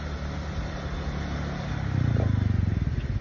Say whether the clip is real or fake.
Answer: real